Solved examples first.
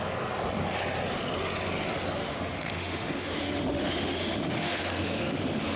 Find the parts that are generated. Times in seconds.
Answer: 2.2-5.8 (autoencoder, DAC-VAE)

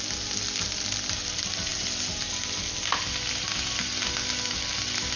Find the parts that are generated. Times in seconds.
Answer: none

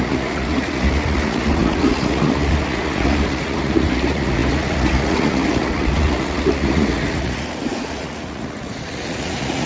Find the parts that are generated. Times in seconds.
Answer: 0.0-9.7 (vocoder, Vocos)

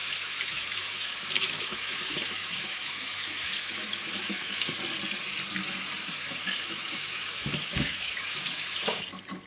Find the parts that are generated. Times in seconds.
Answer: 0.0-4.7 (autoencoder, DAC-VAE); 6.0-9.0